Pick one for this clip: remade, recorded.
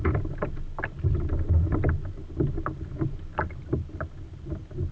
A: recorded